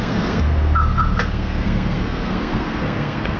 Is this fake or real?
fake